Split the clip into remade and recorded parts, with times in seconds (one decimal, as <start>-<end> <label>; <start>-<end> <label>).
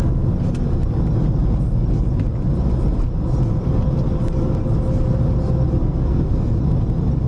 0.0-5.8 recorded; 5.8-6.6 remade; 6.6-7.3 recorded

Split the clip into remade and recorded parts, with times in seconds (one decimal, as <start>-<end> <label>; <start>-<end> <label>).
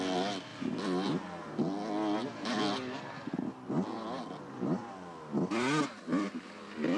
0.0-7.0 recorded